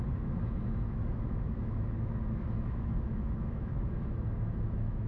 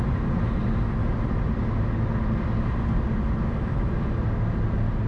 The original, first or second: second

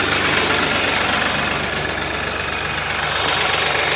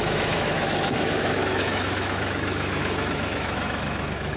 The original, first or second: first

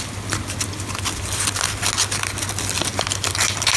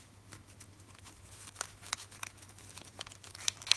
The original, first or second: first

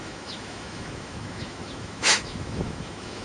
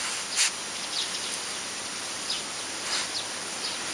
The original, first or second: second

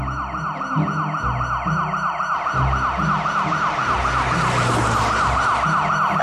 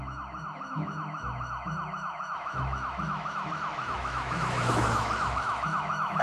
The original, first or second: first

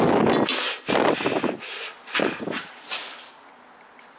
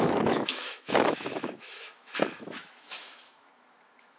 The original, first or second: first